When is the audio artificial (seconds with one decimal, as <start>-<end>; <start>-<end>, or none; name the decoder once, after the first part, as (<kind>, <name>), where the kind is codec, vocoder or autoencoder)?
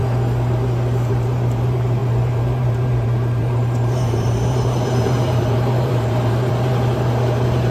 1.1-7.7 (vocoder, BigVGAN v2)